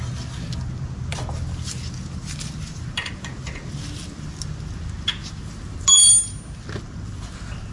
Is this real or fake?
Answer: real